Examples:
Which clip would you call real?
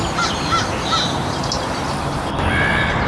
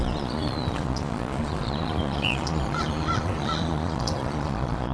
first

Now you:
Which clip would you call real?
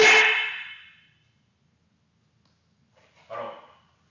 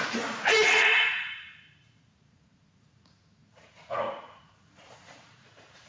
first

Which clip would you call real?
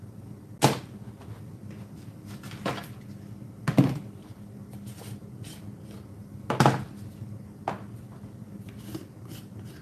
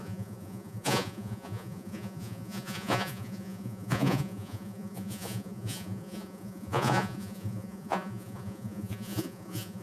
first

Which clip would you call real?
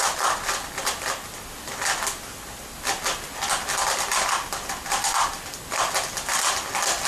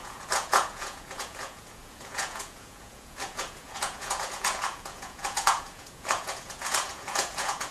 first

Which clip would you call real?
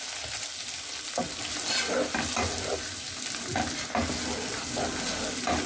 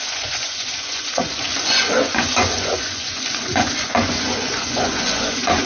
first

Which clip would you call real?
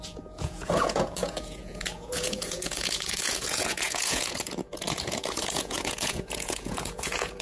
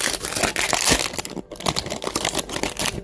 second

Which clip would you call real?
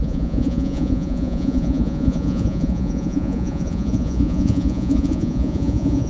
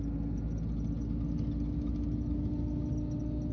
second